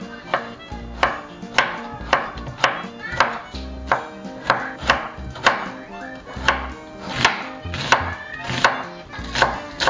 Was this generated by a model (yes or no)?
no